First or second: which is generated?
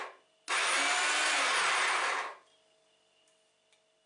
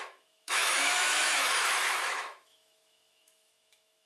second